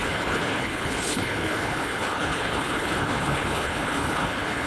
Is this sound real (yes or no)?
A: no